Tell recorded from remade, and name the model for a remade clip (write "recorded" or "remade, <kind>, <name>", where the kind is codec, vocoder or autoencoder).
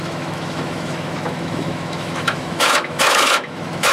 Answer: remade, autoencoder, DAC-VAE